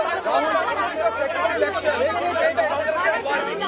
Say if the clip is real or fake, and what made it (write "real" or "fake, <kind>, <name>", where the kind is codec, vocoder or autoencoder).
real